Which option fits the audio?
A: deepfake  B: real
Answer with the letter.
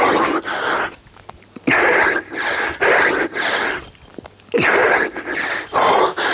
B